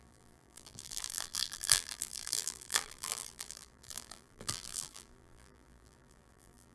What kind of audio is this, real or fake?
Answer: fake